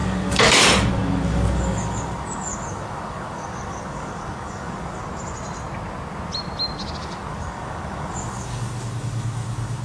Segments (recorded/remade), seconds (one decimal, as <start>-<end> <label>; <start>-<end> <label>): 0.0-5.0 remade; 5.0-7.0 recorded; 7.0-9.8 remade